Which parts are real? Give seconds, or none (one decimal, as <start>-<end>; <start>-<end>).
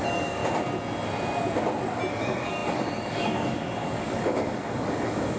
0.4-2.1